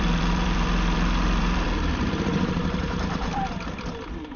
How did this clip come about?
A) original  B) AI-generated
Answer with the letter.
B